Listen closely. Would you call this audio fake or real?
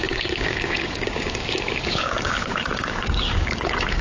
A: fake